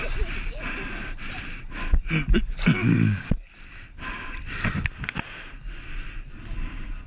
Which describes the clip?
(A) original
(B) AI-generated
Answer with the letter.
A